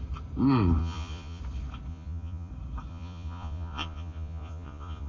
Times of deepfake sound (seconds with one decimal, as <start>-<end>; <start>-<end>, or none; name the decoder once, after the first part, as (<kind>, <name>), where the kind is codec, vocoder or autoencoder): 0.8-1.4 (vocoder, Vocos); 1.9-2.5; 2.9-5.1